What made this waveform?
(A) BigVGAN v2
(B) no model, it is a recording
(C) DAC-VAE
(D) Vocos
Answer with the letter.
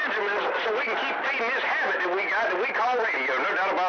B